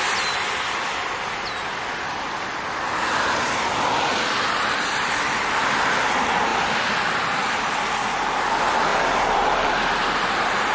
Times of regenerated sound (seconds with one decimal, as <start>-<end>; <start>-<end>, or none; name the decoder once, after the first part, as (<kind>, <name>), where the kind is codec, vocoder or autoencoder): 8.9-9.7 (vocoder, BigVGAN v2)